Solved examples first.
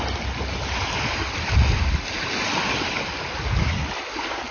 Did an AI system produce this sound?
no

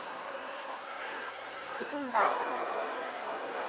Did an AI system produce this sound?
yes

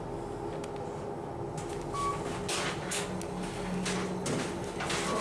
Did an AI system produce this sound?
no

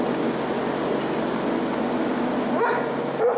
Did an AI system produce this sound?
no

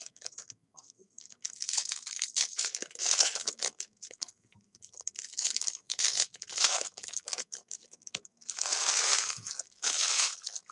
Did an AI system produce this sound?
yes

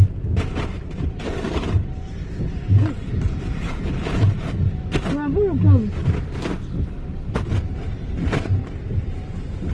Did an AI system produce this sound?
no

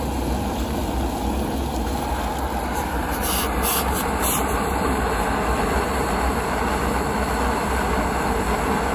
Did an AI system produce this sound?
no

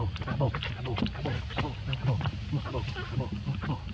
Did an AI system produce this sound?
no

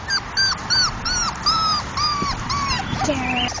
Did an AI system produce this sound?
no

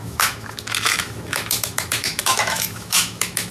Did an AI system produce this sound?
yes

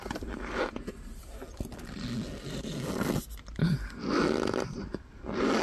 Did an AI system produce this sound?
no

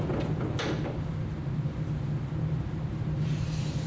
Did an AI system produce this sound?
no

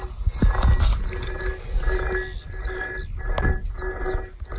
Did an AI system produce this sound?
no